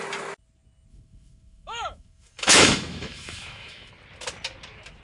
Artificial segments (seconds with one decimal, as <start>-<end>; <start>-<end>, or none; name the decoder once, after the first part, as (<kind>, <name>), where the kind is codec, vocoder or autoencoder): 0.9-3.9 (autoencoder, DAC-VAE)